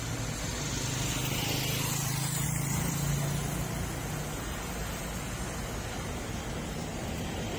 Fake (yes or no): no